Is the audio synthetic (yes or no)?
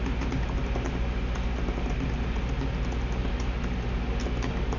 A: no